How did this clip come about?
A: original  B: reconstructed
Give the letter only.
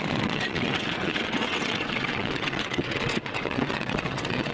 B